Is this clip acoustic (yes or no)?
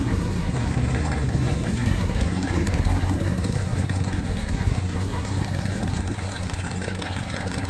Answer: no